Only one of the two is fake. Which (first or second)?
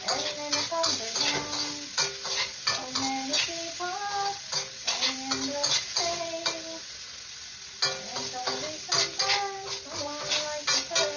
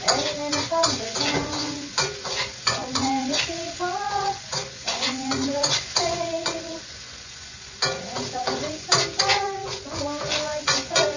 second